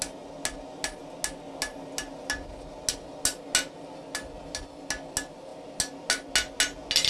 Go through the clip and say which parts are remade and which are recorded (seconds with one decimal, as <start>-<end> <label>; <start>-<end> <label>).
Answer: 0.0-7.1 recorded